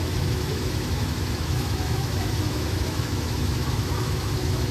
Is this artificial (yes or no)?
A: yes